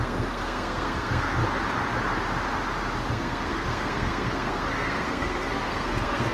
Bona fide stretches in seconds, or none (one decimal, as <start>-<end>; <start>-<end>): 1.4-3.1